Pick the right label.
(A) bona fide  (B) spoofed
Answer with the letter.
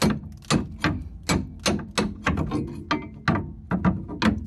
A